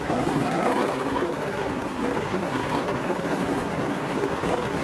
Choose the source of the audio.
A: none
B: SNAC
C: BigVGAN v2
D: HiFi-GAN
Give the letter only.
B